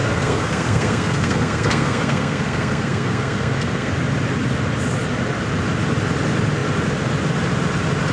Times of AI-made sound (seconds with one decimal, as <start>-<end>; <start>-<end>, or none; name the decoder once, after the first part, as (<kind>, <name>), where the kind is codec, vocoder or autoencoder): 0.0-3.9 (codec, SNAC)